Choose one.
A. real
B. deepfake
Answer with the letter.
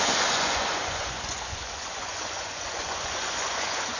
B